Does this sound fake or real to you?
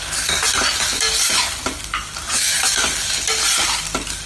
real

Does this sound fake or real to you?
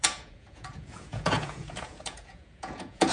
fake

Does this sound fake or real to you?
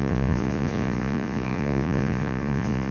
fake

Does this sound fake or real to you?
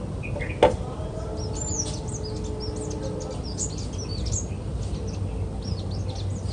real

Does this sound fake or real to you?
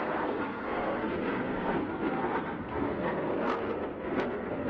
fake